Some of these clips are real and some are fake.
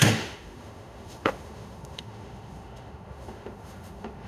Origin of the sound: fake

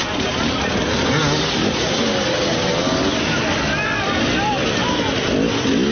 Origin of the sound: real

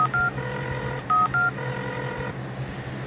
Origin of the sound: real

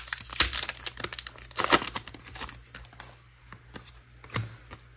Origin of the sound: real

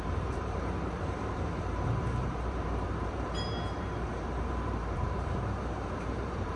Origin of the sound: fake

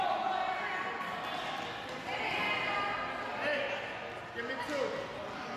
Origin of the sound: real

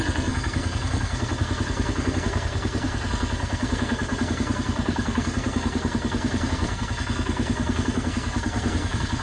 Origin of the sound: fake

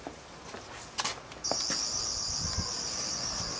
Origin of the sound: real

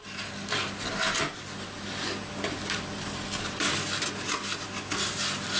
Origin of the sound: real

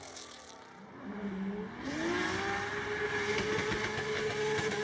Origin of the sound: real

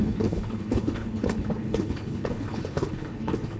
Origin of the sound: fake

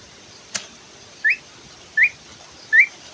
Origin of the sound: real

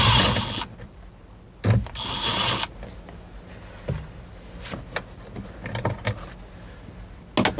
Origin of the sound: real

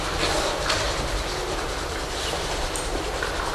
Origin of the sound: real